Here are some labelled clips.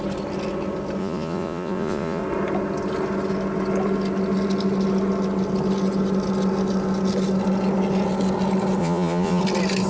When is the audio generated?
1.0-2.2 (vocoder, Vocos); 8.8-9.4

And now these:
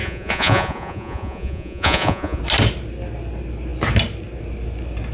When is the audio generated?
0.0-2.4 (vocoder, Vocos)